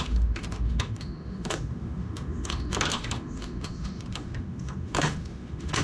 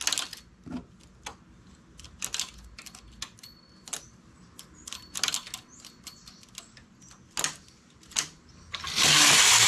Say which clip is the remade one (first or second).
first